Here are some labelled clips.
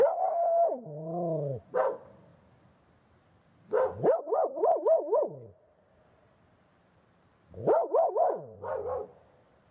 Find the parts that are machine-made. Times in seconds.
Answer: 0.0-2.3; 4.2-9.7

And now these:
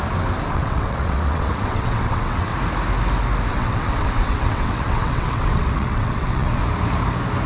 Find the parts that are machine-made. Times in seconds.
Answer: 0.5-2.5; 3.5-6.6

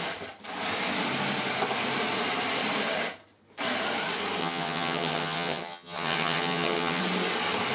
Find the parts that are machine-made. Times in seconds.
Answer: 4.4-7.0

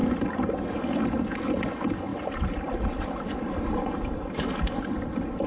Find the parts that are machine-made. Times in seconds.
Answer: 0.0-0.5